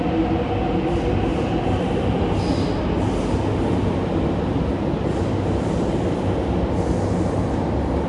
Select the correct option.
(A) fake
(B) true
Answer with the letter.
B